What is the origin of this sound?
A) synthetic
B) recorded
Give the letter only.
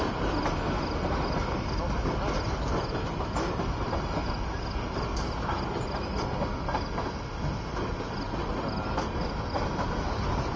B